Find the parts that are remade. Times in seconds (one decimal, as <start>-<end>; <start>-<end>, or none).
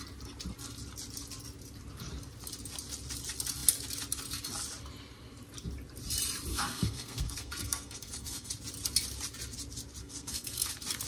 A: 6.5-8.5; 10.0-10.7